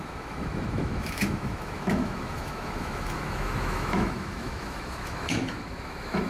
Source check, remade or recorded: remade